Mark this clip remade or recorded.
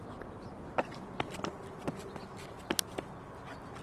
recorded